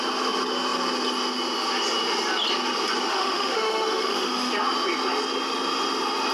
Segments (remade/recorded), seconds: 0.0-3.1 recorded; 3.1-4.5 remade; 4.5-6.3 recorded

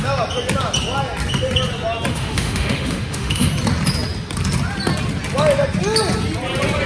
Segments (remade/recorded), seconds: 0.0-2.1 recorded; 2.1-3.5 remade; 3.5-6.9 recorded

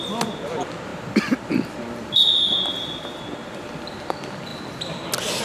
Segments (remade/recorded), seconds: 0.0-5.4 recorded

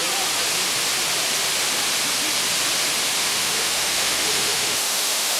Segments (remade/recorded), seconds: 0.0-3.2 recorded; 3.2-5.4 remade

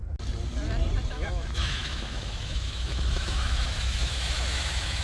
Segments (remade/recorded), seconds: 0.0-1.1 recorded; 1.1-5.0 remade